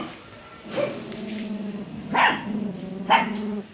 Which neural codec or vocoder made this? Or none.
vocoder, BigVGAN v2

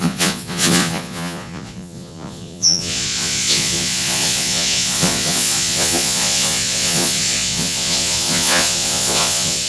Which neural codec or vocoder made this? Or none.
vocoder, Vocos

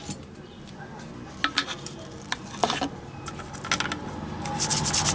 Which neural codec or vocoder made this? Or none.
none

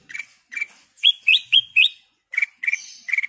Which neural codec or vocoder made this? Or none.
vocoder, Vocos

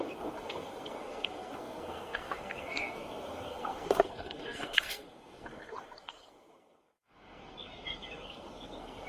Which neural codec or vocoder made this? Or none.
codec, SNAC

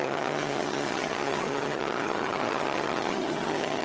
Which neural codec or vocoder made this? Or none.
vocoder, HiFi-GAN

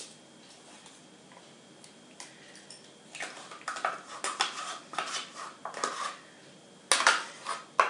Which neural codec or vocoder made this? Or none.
none